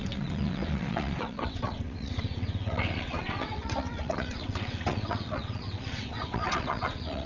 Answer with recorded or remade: remade